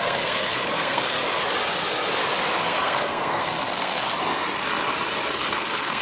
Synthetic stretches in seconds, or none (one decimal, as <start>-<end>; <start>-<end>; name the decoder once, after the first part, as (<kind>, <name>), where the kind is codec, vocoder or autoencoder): 0.0-1.2 (codec, SNAC); 2.6-4.1; 5.4-6.0